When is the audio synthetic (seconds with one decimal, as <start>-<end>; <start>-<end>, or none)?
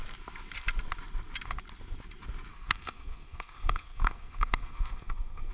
2.5-5.5